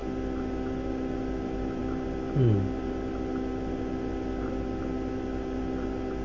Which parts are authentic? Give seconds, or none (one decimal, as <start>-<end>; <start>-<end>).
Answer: 0.0-6.2